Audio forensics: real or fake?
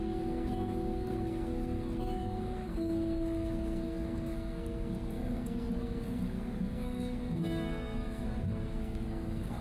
fake